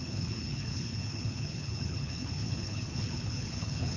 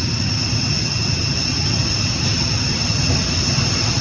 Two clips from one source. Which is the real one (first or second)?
second